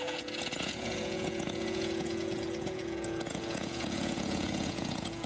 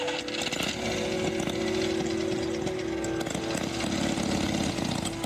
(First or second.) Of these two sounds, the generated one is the first